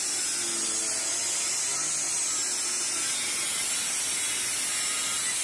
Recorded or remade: recorded